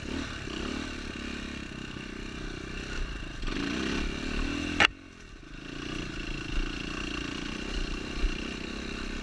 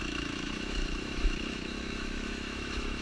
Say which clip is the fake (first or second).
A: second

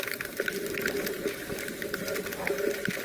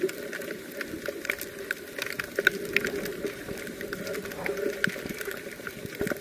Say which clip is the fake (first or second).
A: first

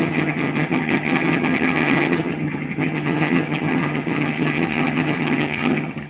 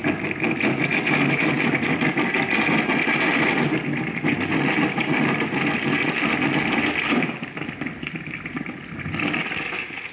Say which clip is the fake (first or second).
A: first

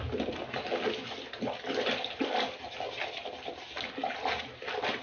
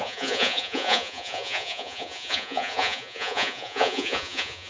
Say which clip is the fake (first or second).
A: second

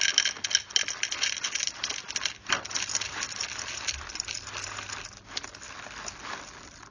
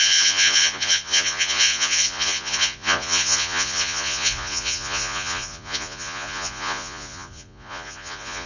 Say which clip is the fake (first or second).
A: second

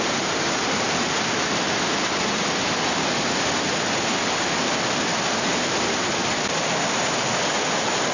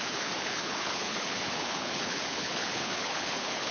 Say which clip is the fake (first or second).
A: second